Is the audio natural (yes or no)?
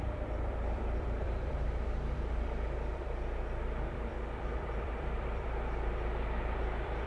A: no